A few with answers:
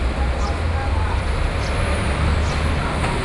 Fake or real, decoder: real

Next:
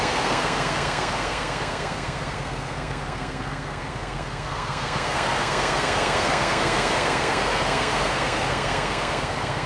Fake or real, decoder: fake, codec, SNAC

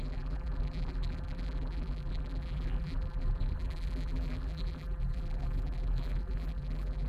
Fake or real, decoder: fake, vocoder, BigVGAN v2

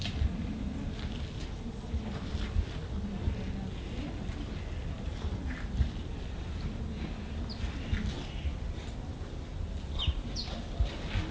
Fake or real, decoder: real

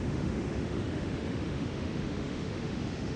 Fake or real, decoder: fake, autoencoder, DAC-VAE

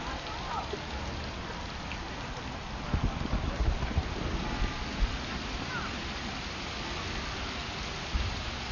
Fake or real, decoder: real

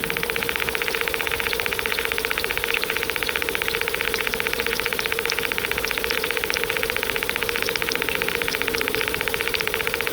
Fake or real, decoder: real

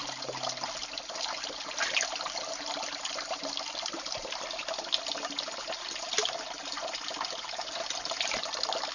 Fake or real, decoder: real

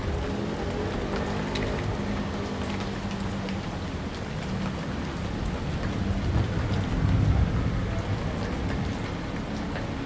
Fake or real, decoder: real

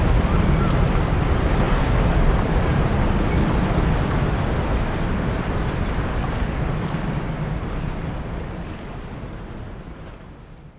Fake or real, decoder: real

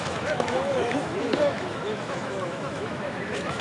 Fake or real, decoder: fake, autoencoder, DAC-VAE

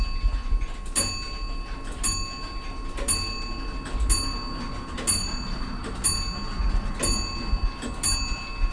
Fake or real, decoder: real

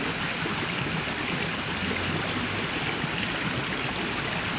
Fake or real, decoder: real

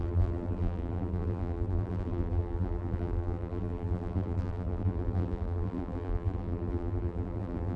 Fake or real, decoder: fake, vocoder, BigVGAN v2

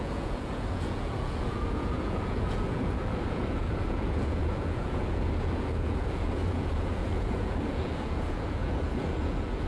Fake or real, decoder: fake, vocoder, Vocos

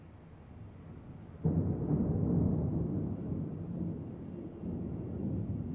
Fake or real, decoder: real